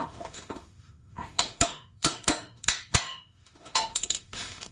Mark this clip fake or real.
fake